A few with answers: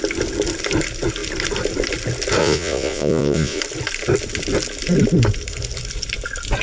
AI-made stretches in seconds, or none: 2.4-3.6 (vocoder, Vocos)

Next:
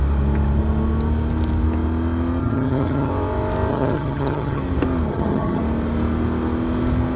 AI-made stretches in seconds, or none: 2.4-3.1 (vocoder, HiFi-GAN); 3.7-4.6; 5.1-5.6

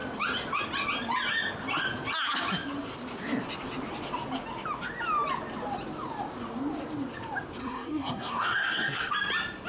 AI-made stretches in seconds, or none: 7.6-9.1 (codec, SNAC)